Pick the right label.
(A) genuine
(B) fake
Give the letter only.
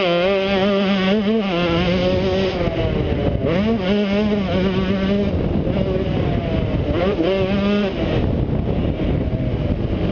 A